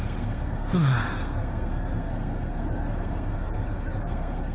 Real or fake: fake